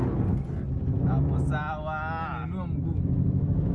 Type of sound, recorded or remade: recorded